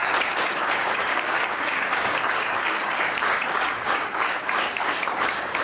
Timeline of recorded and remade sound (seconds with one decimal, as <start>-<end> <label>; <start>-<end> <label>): 0.0-5.6 remade